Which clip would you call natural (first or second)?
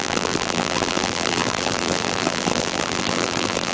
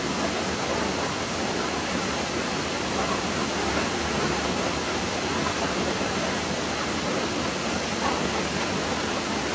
second